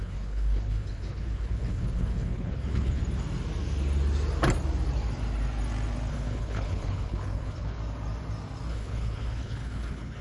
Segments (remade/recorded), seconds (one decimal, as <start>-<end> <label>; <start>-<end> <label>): 0.0-3.0 remade; 3.0-6.1 recorded; 6.1-7.8 remade; 7.8-8.7 recorded; 8.7-10.2 remade